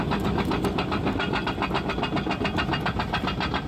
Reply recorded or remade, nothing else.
recorded